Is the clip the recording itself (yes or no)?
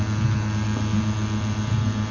no